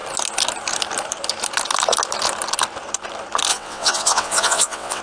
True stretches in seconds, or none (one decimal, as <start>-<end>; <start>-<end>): 0.0-3.5